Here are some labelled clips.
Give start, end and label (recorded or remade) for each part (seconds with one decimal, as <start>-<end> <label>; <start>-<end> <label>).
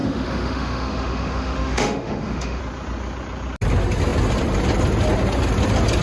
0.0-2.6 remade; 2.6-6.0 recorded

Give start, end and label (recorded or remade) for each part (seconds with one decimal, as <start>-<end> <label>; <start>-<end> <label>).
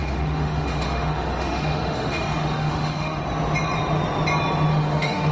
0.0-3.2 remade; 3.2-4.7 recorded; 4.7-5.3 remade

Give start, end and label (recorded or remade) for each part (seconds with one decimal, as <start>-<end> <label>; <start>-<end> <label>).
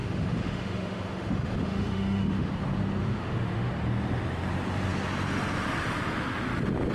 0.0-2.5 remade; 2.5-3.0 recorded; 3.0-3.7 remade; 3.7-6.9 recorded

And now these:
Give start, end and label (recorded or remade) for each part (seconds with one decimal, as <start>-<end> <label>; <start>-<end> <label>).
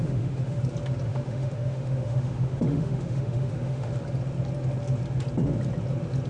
0.0-0.6 remade; 0.6-1.1 recorded; 1.1-3.9 remade; 3.9-6.3 recorded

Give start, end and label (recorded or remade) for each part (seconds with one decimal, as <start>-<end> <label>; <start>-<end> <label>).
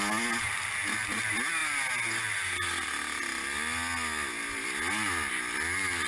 0.0-6.1 recorded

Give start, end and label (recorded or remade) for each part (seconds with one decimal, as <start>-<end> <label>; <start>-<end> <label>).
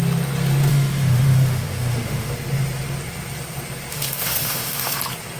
0.0-0.7 recorded; 0.7-2.3 remade; 2.3-3.9 recorded; 3.9-5.0 remade; 5.0-5.4 recorded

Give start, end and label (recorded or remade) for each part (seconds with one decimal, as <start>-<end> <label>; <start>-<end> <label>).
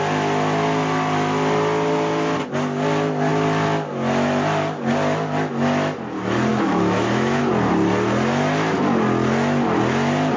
0.0-6.5 recorded; 6.5-7.4 remade; 7.4-10.4 recorded